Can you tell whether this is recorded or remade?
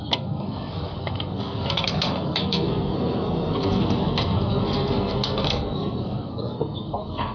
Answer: remade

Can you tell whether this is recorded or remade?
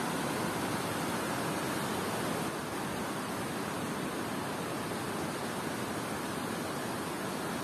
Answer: recorded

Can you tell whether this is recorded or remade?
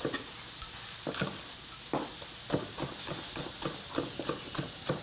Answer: recorded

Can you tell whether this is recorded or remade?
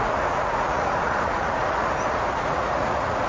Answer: remade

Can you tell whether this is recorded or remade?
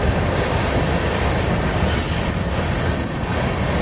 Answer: recorded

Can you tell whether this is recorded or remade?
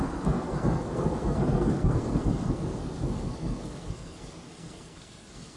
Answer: remade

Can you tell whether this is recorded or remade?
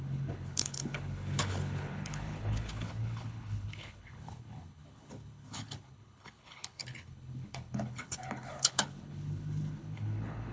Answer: remade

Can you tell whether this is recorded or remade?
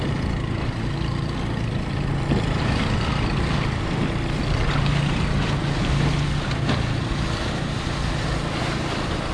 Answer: recorded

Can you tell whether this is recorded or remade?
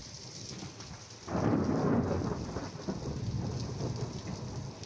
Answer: recorded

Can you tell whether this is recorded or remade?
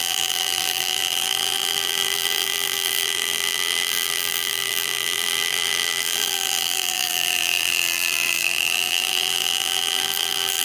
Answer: remade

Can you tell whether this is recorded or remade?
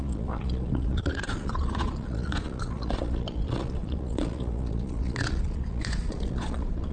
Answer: remade